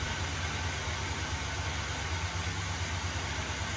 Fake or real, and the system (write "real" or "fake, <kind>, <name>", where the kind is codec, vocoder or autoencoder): real